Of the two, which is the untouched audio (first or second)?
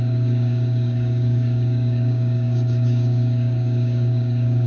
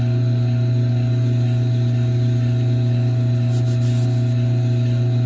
second